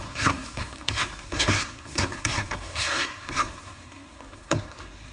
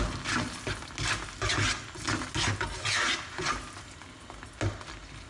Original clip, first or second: second